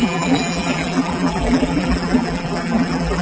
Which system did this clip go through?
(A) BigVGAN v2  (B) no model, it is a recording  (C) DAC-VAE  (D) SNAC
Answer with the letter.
A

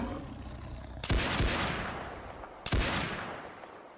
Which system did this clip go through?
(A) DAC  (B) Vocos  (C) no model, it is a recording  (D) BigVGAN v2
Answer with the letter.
C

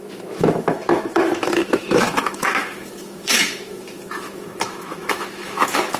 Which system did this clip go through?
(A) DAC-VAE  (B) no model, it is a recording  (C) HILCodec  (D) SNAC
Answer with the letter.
A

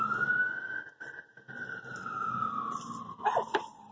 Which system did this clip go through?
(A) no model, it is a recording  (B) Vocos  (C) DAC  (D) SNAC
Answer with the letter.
A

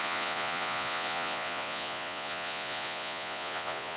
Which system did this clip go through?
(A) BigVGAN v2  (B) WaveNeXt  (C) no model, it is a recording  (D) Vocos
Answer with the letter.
D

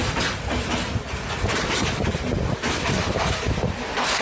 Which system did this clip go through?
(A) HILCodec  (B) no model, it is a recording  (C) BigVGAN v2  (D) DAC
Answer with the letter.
B